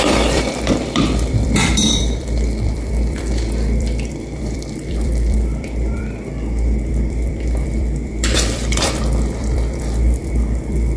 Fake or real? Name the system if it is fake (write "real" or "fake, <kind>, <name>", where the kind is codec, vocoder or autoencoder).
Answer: fake, vocoder, BigVGAN v2